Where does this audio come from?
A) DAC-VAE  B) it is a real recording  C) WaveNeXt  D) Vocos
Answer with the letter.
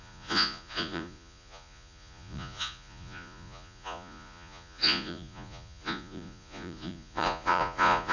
D